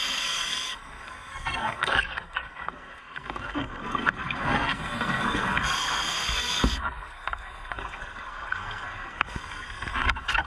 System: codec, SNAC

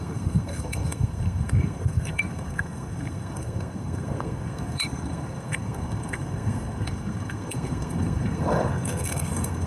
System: codec, SNAC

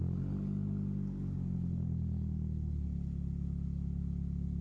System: none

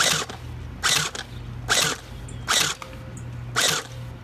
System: none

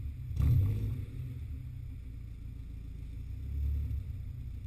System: none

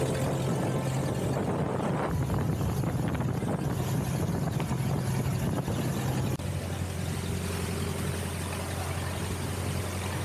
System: none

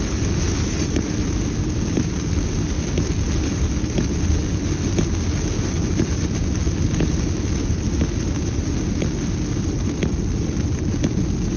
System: none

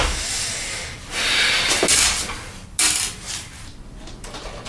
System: none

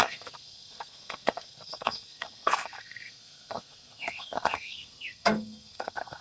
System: codec, SNAC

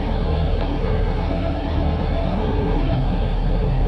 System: codec, SNAC